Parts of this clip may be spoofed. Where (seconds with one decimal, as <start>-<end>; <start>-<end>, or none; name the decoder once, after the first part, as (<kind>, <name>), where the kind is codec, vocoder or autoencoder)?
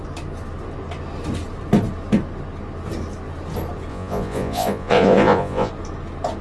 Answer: 3.9-5.7 (vocoder, Vocos)